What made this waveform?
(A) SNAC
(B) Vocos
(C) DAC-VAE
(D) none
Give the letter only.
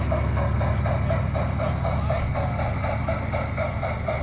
D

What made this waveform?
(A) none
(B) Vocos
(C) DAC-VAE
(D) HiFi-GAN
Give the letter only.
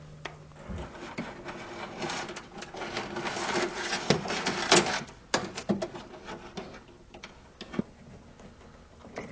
A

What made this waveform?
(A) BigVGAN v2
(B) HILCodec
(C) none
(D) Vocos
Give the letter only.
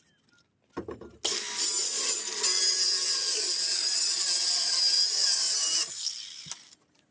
C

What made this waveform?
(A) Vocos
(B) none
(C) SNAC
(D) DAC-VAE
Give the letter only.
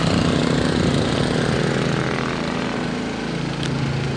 B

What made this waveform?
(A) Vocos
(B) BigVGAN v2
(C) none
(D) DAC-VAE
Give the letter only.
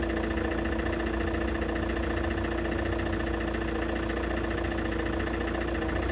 C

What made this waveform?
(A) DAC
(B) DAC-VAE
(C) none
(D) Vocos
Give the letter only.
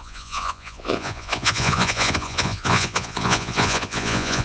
D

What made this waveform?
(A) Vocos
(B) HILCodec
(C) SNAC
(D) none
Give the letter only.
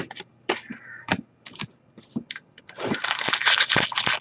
D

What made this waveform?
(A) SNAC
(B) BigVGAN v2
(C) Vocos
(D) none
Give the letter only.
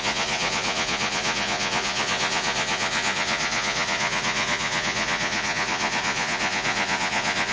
C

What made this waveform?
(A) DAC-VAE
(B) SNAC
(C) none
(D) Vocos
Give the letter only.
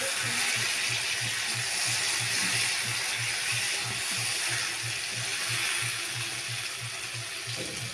C